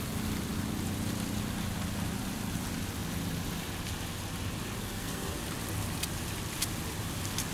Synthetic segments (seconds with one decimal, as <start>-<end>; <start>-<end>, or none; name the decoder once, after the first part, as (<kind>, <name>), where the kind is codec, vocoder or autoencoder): 4.8-5.4 (codec, SNAC)